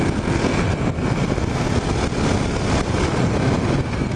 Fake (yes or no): no